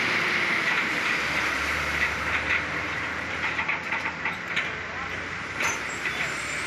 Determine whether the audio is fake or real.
fake